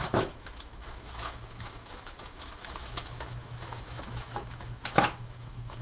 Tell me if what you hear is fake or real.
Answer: fake